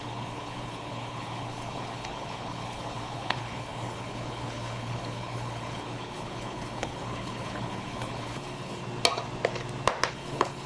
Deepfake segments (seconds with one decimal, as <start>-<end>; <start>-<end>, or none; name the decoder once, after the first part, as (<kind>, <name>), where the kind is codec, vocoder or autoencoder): 0.0-8.8 (codec, HILCodec); 10.1-10.7